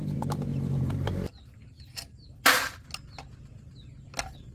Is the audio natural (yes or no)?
yes